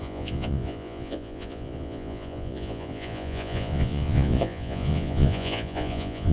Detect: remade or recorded remade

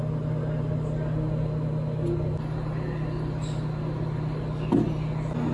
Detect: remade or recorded recorded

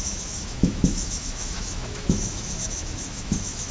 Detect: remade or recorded remade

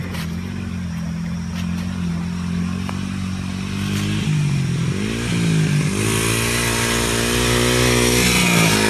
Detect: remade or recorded recorded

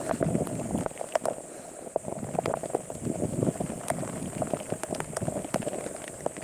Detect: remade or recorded recorded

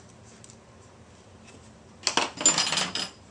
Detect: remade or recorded recorded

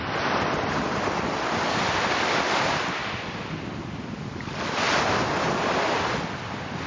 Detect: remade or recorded recorded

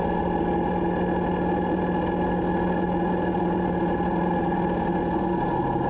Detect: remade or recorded recorded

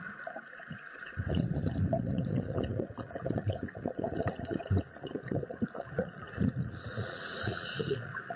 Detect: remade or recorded remade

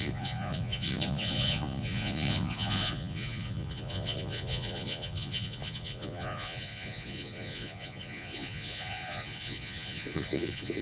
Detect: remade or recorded remade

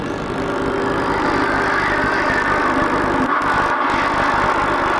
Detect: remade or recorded recorded